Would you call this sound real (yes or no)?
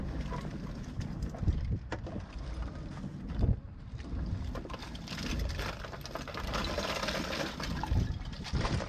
yes